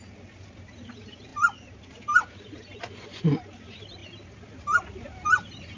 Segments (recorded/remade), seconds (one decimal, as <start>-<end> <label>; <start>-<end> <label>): 0.0-1.3 remade; 1.3-3.6 recorded; 3.6-4.0 remade; 4.0-4.5 recorded; 4.5-5.8 remade